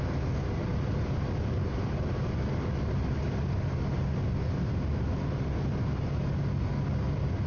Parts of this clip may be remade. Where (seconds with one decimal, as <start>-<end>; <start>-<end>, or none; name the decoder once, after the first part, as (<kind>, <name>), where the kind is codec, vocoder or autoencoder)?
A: none